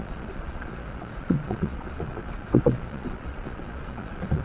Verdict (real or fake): fake